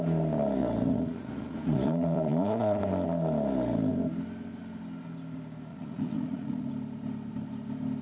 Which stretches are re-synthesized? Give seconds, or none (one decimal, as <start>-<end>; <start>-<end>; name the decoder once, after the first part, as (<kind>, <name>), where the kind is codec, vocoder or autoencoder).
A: 0.6-2.8 (vocoder, Vocos); 5.7-6.7